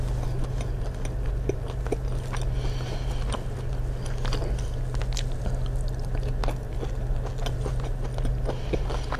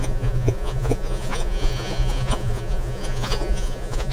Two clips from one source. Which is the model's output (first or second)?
second